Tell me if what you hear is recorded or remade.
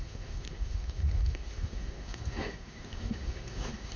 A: remade